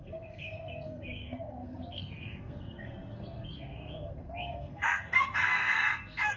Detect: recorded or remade remade